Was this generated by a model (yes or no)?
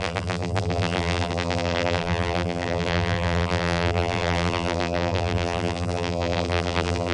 yes